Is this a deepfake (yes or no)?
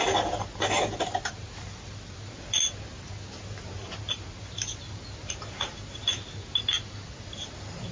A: no